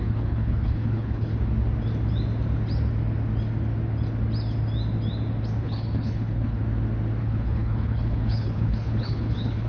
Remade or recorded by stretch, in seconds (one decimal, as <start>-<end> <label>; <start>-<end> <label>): 0.0-1.3 remade; 1.3-5.6 recorded; 5.6-6.6 remade; 6.6-7.2 recorded; 7.2-9.7 remade